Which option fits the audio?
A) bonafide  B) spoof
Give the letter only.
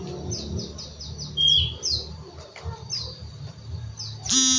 A